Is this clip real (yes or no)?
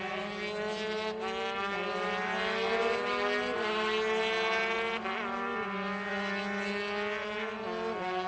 yes